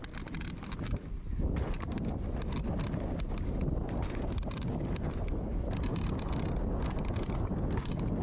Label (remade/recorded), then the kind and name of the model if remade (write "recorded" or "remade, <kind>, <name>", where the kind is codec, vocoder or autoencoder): recorded